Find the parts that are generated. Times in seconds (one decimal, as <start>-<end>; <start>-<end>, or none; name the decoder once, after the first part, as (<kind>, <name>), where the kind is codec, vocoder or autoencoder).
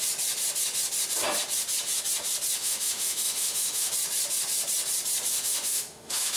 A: 2.6-3.9 (autoencoder, DAC-VAE); 5.3-6.4